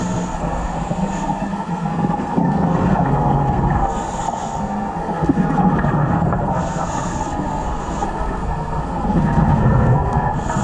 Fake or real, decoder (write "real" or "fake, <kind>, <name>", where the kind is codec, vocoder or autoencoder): fake, codec, SNAC